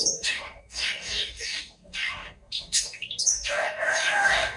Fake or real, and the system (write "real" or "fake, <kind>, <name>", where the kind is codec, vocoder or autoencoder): fake, codec, DAC